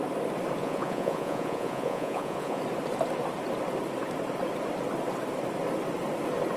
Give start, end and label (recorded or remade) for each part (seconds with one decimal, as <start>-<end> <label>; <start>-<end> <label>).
0.0-0.6 recorded; 0.6-2.6 remade; 2.6-6.6 recorded